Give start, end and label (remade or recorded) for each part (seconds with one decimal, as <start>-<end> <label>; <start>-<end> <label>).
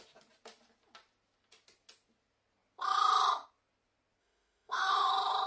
0.0-4.2 recorded; 4.2-5.1 remade; 5.1-5.5 recorded